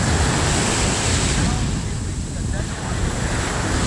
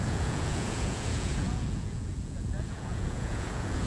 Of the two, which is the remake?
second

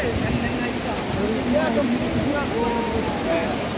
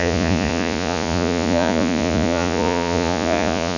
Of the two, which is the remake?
second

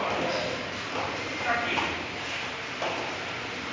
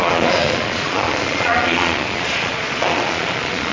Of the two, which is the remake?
second